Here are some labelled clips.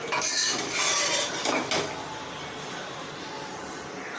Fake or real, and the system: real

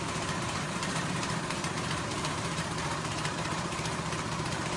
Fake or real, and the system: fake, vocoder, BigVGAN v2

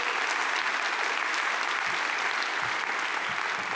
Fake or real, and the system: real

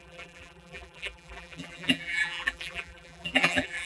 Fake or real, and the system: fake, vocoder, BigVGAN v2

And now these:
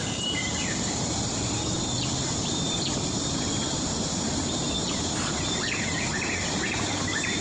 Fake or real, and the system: fake, vocoder, BigVGAN v2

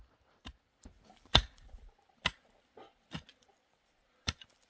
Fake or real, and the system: fake, vocoder, BigVGAN v2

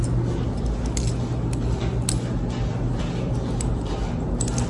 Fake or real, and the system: real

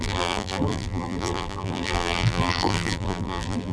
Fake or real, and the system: fake, vocoder, BigVGAN v2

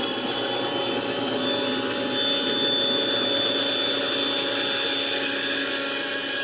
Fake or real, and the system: real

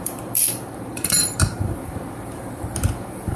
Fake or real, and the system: fake, vocoder, BigVGAN v2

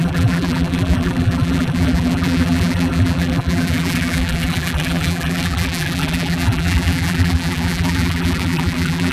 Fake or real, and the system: fake, vocoder, BigVGAN v2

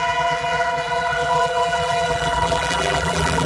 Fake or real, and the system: fake, vocoder, BigVGAN v2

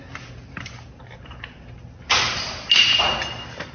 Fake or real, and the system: real